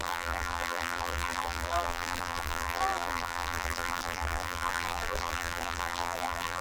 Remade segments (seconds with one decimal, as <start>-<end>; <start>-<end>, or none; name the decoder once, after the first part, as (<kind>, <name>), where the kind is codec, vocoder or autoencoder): 0.0-6.6 (vocoder, BigVGAN v2)